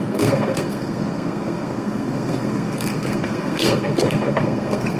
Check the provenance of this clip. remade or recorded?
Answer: remade